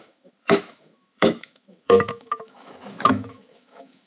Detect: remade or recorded remade